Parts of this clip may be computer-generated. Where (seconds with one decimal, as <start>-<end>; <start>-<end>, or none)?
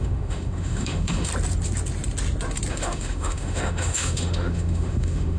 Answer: 0.0-1.3; 2.7-5.4